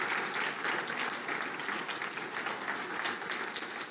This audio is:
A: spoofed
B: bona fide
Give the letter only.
B